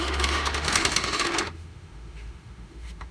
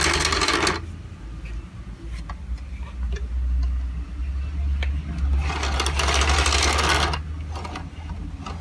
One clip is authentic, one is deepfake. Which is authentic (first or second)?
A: second